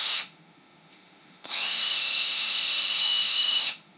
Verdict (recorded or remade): remade